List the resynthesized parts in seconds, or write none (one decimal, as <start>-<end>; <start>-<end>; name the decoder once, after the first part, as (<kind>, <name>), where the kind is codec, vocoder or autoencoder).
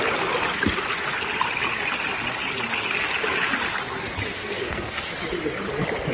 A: 4.4-5.1 (codec, SNAC)